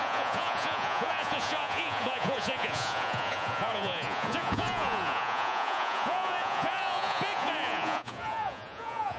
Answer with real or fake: fake